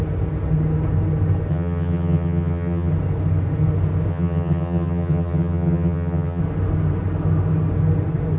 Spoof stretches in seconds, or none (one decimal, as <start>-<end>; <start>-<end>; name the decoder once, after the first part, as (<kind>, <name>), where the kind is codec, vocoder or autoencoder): 1.5-2.9 (vocoder, HiFi-GAN); 4.1-6.4